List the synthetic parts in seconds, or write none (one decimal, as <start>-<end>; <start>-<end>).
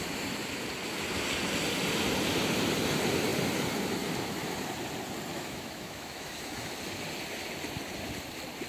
5.3-6.7